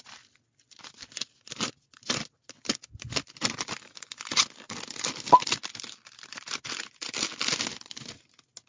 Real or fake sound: real